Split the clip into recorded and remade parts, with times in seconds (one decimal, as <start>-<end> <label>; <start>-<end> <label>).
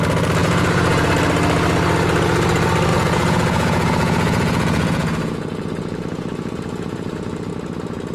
0.0-0.4 recorded; 0.4-1.1 remade; 1.1-2.9 recorded; 2.9-7.5 remade; 7.5-8.1 recorded